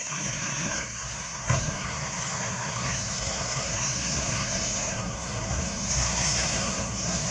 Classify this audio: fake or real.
fake